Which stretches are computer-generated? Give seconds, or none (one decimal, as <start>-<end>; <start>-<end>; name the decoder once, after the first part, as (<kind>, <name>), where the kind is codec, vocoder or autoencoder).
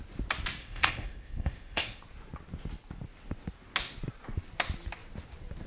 0.6-2.0 (codec, ZipCodec)